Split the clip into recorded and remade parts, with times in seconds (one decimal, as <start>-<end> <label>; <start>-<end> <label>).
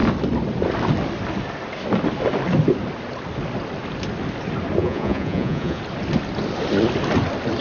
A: 0.0-4.8 recorded; 4.8-5.8 remade; 5.8-7.6 recorded